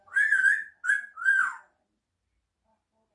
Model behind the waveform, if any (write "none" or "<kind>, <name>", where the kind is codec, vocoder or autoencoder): none